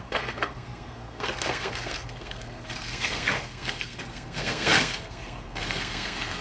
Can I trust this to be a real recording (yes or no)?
no